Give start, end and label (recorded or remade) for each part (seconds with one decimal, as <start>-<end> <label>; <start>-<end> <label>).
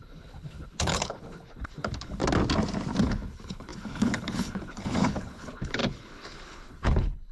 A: 0.0-2.2 remade; 2.2-3.0 recorded; 3.0-7.3 remade